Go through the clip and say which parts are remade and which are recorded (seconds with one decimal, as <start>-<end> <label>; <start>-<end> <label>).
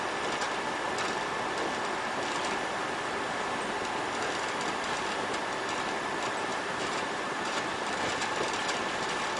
0.0-6.5 recorded; 6.5-8.1 remade; 8.1-9.4 recorded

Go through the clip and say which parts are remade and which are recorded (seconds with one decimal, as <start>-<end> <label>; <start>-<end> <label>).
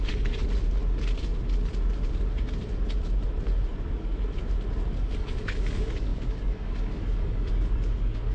0.0-0.4 remade; 0.4-5.2 recorded; 5.2-8.3 remade